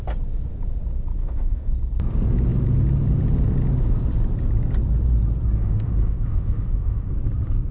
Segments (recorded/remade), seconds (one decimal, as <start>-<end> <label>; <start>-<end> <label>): 0.0-1.2 recorded; 1.2-1.7 remade; 1.7-5.6 recorded; 5.6-7.1 remade; 7.1-7.7 recorded